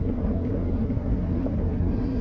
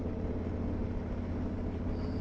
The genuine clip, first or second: second